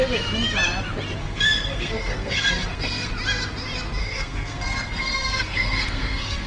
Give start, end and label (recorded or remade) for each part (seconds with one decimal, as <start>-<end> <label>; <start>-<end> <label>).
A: 0.0-1.2 recorded; 1.2-3.1 remade; 3.1-4.0 recorded; 4.0-6.5 remade